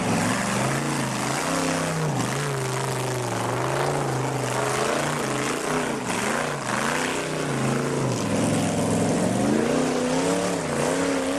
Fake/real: real